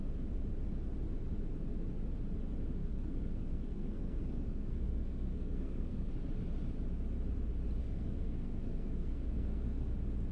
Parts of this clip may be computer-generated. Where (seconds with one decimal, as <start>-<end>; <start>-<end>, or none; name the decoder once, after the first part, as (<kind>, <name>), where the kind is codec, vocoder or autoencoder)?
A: 2.8-6.1 (codec, SNAC); 7.8-9.9